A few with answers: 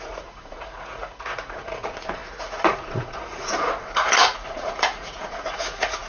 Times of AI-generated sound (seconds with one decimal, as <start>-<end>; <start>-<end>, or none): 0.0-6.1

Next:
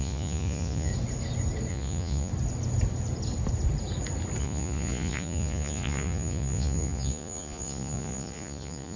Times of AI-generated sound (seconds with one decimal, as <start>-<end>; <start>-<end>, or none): 0.0-0.9; 1.7-2.3; 4.4-9.0

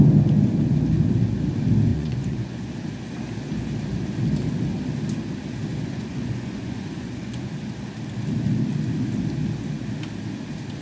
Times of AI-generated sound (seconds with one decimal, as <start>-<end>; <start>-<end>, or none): 1.9-2.7; 5.7-7.5